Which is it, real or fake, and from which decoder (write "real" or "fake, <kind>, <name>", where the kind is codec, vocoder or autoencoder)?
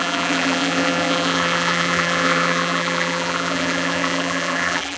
fake, vocoder, BigVGAN v2